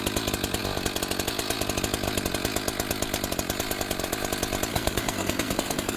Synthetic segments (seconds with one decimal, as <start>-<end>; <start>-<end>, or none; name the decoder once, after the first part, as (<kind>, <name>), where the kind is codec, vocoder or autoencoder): 4.7-6.0 (codec, SNAC)